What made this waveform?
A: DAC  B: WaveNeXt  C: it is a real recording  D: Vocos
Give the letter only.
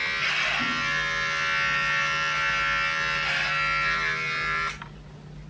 C